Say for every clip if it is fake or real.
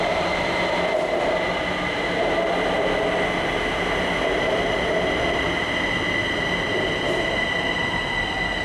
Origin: real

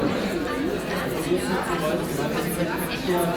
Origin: real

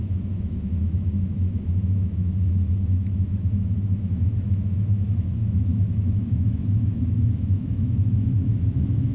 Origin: fake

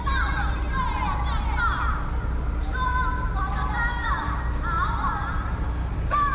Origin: real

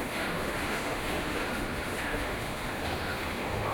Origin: fake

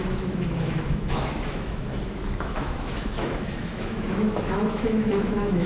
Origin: fake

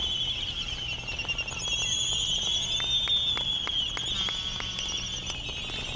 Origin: real